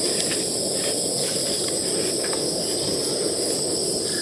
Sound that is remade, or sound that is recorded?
recorded